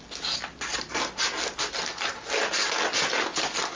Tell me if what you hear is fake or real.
real